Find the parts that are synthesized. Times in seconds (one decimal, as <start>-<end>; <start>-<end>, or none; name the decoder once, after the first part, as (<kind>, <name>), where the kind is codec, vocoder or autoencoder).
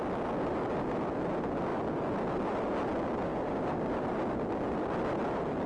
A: none